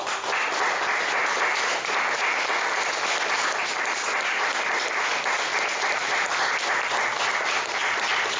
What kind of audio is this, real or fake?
real